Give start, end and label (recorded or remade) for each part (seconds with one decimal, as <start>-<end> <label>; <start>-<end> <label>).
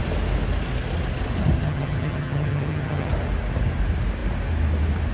0.0-1.6 recorded; 1.6-3.1 remade; 3.1-5.1 recorded